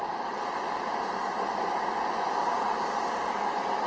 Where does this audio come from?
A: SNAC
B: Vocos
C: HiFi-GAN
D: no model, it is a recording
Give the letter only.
D